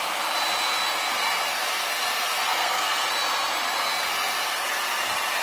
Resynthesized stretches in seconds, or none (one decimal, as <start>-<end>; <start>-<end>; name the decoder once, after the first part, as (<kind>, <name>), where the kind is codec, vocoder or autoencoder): 2.5-3.1 (codec, SNAC)